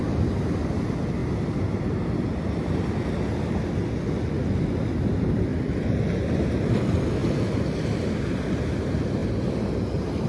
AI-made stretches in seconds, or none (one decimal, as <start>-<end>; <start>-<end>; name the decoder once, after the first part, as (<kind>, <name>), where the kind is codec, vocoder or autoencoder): none

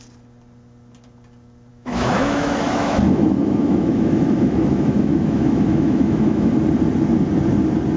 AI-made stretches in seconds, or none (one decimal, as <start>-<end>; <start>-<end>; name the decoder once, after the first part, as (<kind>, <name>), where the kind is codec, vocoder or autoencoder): 1.7-6.5 (autoencoder, DAC-VAE)

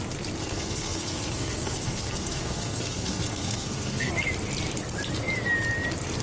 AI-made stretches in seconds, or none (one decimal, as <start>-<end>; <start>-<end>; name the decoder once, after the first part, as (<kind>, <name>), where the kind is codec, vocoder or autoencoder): 0.4-4.1 (codec, SNAC)

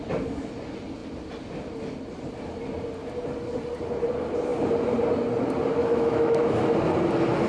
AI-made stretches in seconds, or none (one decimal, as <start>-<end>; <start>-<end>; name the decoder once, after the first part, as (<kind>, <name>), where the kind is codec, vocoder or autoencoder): 5.7-6.5 (autoencoder, DAC-VAE)

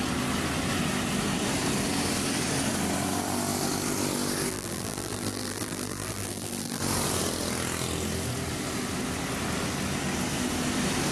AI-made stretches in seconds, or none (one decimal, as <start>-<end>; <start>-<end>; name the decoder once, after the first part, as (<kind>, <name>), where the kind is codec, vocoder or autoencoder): 4.5-6.8 (vocoder, BigVGAN v2)

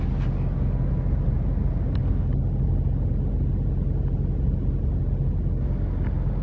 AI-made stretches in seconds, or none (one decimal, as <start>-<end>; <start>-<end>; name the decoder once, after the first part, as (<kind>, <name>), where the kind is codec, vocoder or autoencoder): none

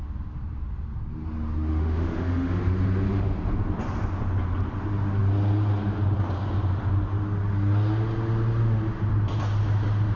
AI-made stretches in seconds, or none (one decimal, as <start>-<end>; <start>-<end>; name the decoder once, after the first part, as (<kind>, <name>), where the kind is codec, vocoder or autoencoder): 1.7-2.6 (autoencoder, DAC-VAE)